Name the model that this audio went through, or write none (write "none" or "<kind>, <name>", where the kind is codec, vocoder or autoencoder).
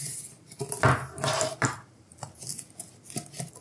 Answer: none